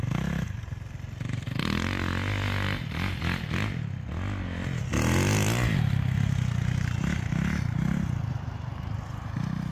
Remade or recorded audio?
recorded